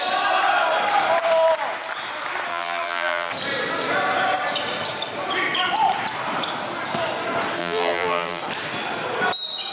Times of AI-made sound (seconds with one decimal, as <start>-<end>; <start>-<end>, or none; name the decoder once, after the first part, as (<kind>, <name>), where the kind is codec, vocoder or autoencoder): 2.5-3.3 (vocoder, BigVGAN v2); 7.6-8.4